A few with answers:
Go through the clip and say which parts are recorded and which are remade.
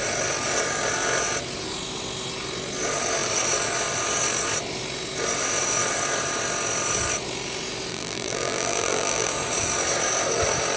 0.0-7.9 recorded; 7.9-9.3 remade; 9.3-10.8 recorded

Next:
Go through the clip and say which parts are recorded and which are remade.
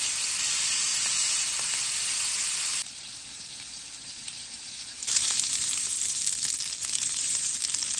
0.0-0.9 recorded; 0.9-1.5 remade; 1.5-4.0 recorded; 4.0-6.2 remade; 6.2-6.8 recorded; 6.8-7.6 remade; 7.6-8.0 recorded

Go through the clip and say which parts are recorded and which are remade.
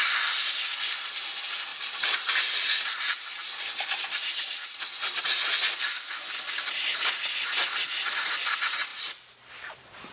0.0-1.7 recorded; 1.7-5.2 remade; 5.2-8.9 recorded; 8.9-9.7 remade; 9.7-10.1 recorded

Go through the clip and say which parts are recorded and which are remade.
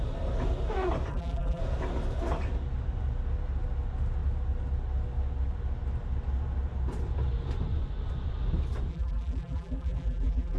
0.0-1.1 recorded; 1.1-1.6 remade; 1.6-8.9 recorded; 8.9-10.6 remade